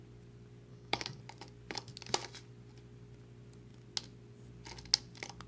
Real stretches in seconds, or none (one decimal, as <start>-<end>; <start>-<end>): 0.0-0.7; 1.2-5.5